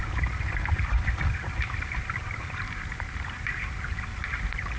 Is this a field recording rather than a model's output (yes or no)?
yes